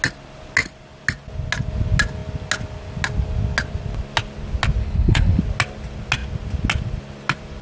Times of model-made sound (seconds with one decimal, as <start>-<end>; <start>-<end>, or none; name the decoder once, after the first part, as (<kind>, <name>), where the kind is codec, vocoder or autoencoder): 4.8-5.4 (codec, HILCodec)